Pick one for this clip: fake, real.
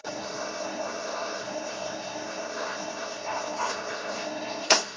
fake